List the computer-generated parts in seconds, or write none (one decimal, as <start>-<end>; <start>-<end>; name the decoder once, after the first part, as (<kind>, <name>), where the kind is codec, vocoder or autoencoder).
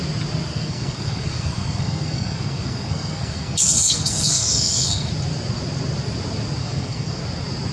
0.5-5.1 (codec, SNAC); 6.6-7.2